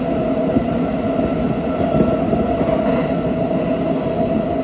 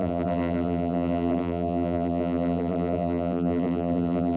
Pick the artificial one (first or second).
second